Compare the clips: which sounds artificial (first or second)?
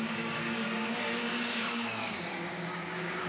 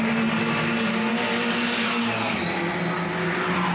first